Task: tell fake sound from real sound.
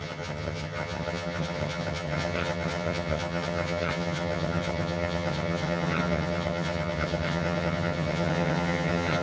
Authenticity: fake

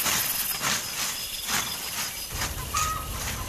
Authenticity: real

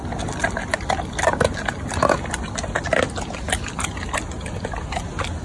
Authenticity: real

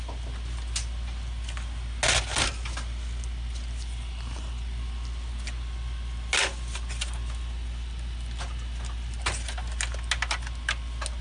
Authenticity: real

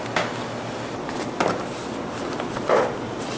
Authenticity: real